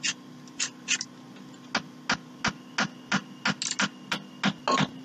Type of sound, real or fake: real